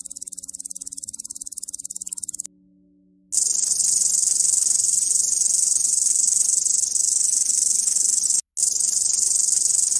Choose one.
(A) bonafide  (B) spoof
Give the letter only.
A